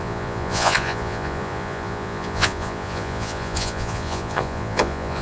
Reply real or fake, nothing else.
fake